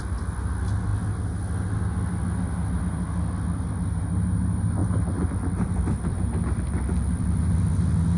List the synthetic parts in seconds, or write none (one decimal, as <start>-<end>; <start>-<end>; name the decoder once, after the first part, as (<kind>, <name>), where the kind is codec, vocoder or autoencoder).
4.8-8.2 (vocoder, BigVGAN v2)

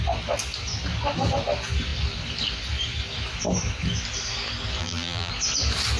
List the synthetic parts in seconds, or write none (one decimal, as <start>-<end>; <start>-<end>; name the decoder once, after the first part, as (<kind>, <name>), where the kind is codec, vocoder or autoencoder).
4.8-5.3 (vocoder, BigVGAN v2)

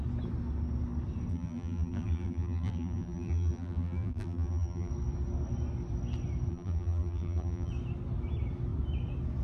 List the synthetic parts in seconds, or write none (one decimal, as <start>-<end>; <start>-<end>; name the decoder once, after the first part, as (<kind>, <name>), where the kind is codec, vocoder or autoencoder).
1.3-4.9 (vocoder, BigVGAN v2); 6.5-7.7

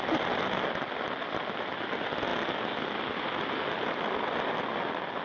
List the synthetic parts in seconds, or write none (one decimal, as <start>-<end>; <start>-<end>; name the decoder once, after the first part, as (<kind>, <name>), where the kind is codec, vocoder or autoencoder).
none

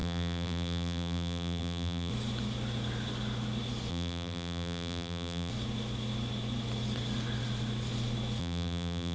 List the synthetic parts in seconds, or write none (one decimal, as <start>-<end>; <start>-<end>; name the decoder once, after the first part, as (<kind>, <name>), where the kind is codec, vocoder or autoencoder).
0.0-2.1 (vocoder, BigVGAN v2); 3.9-5.5; 8.4-9.1